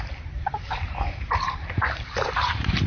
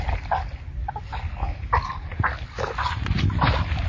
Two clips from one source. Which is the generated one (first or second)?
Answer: first